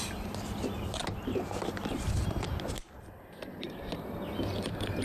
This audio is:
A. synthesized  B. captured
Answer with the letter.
B